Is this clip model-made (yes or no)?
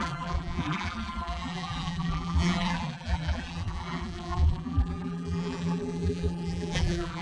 yes